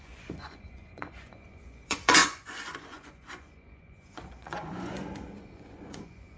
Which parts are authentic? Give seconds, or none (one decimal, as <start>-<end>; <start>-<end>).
none